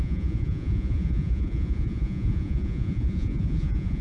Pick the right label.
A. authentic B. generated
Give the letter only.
B